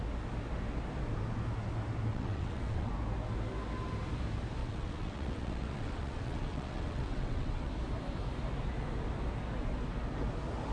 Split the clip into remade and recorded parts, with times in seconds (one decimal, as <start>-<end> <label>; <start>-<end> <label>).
0.0-2.1 recorded; 2.1-2.9 remade; 2.9-4.6 recorded; 4.6-7.7 remade; 7.7-10.7 recorded